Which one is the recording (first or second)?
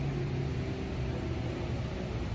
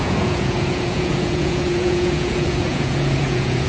first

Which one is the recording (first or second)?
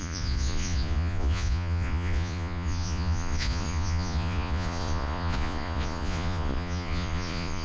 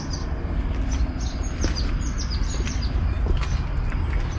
second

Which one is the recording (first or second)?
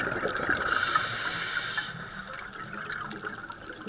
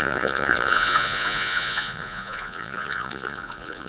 first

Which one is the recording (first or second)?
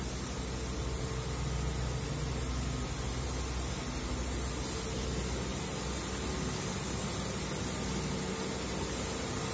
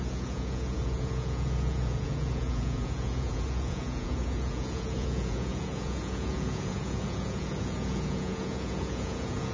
first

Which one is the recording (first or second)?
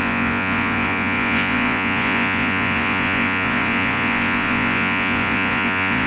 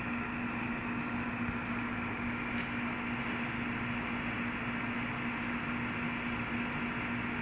second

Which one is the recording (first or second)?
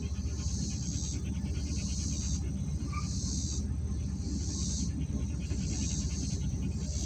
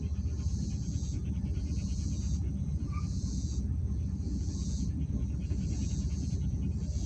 first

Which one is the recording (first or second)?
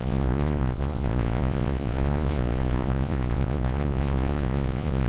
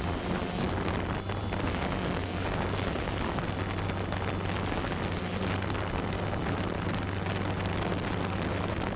second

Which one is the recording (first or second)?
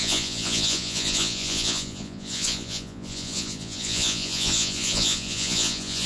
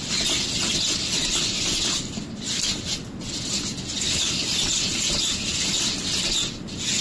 second